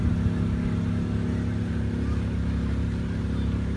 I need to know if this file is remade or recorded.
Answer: recorded